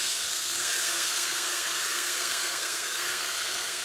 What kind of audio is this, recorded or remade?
remade